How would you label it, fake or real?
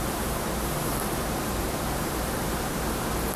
fake